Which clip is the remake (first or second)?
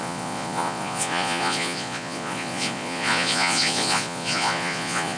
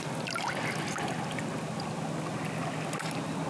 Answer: first